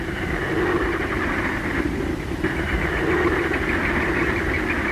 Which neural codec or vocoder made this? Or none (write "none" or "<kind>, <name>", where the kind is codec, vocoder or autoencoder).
none